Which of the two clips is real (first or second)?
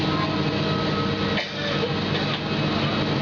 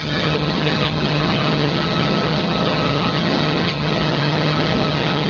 first